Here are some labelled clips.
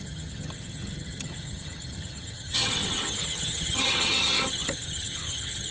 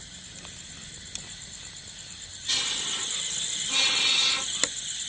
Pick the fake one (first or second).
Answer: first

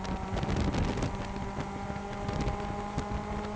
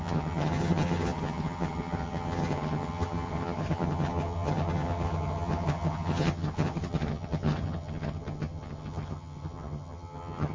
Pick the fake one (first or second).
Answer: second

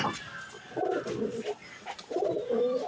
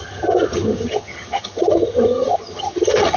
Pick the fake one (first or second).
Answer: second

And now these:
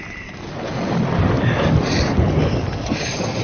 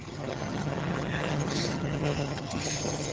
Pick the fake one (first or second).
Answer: second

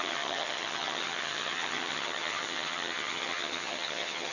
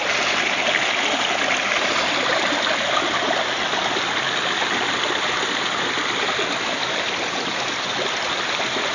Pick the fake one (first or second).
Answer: first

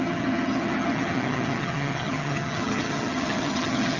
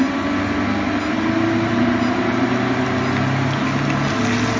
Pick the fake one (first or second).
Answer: first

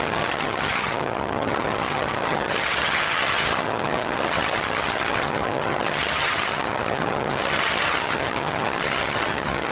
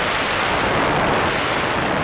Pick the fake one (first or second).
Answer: first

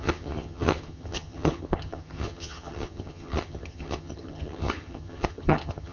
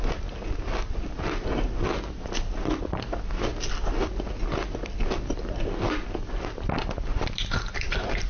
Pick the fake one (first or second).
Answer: first